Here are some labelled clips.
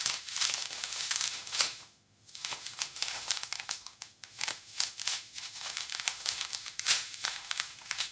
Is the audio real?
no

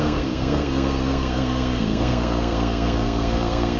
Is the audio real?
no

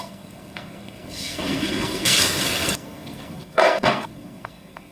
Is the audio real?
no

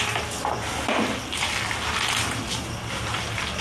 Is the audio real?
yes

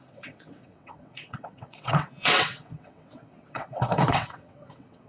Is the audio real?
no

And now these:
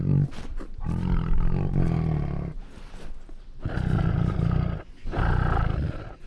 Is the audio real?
yes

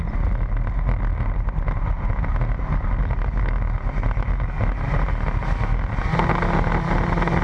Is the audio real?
yes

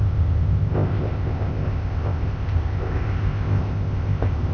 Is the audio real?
no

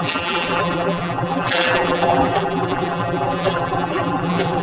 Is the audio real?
no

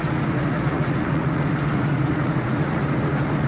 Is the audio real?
no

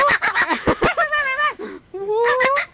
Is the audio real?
no